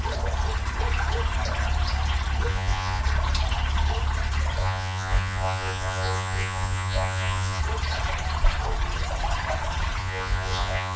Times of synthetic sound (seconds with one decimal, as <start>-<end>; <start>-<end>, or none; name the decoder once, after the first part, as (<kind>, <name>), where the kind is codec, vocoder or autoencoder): 2.5-3.0 (vocoder, Vocos); 4.6-7.6; 10.0-11.0